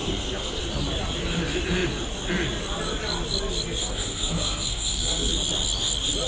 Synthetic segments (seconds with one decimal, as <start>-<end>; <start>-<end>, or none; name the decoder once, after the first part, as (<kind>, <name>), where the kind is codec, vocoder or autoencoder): 0.0-0.6 (codec, SNAC); 3.8-5.3